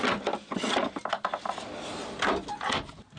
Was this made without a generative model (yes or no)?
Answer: yes